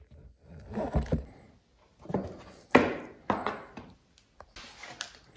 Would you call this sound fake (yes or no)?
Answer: no